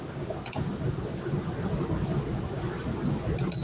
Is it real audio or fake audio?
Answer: real